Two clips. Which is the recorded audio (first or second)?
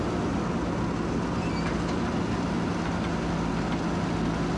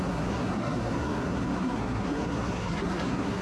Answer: first